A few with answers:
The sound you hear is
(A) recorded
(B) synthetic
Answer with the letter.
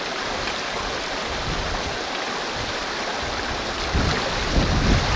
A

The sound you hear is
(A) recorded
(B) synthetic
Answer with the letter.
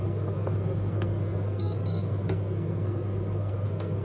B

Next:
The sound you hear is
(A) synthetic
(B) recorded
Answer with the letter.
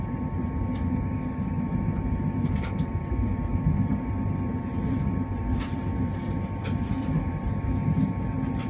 B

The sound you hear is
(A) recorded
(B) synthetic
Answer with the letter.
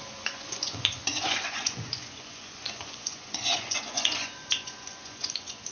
B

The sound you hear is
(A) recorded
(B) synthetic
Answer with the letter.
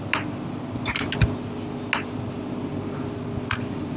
A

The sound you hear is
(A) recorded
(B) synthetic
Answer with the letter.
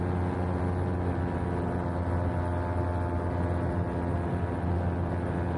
A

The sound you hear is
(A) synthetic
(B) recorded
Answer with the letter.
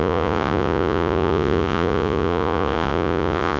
A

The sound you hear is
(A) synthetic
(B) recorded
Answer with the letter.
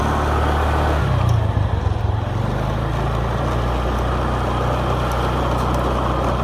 B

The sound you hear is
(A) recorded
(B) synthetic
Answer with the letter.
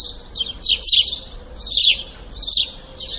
A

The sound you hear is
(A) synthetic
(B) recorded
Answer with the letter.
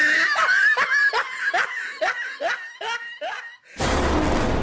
B